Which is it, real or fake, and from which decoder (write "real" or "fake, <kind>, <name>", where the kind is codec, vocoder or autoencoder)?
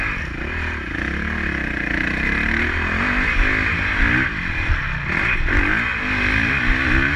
real